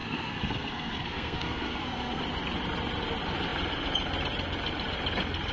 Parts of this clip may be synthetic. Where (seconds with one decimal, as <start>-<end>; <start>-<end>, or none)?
0.0-2.2